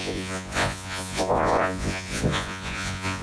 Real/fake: fake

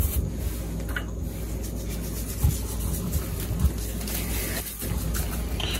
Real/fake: real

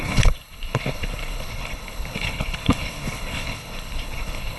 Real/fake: fake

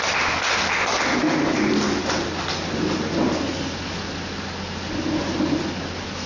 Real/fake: real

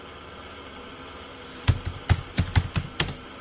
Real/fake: real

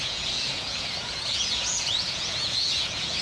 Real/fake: fake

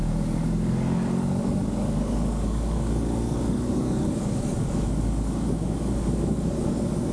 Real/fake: fake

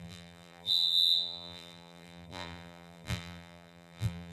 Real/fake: fake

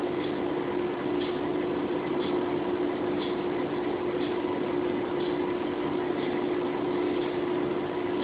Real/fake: real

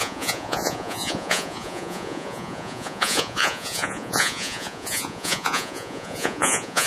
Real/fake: fake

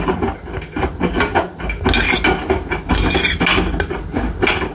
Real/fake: real